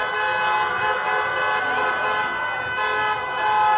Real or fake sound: real